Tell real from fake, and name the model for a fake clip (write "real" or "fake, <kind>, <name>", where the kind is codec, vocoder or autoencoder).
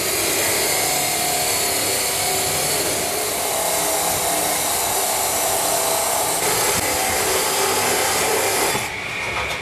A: real